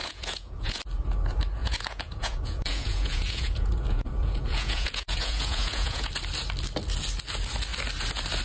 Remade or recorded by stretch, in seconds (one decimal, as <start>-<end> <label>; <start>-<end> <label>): 0.0-0.8 remade; 0.8-1.6 recorded; 1.6-6.1 remade; 6.1-8.4 recorded